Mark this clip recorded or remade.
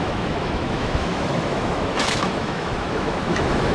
remade